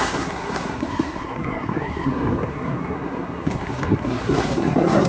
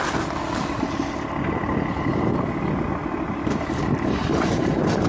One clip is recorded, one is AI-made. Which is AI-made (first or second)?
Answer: first